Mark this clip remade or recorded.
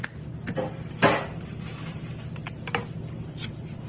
recorded